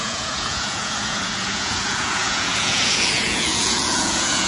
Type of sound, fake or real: fake